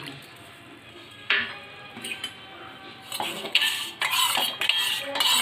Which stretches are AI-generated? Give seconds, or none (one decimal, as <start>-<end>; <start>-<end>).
0.9-1.5; 3.3-4.0